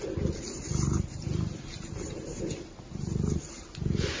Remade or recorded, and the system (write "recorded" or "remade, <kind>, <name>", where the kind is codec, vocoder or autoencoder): recorded